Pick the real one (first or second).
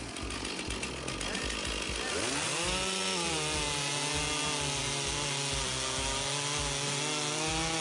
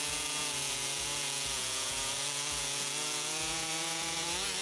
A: first